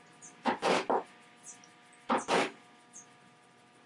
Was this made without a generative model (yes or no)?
yes